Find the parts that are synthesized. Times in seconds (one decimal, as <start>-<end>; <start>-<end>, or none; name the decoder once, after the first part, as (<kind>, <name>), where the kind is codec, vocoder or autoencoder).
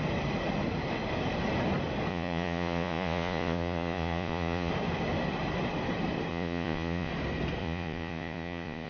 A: 2.1-4.7 (vocoder, Vocos); 6.3-7.1; 7.6-8.9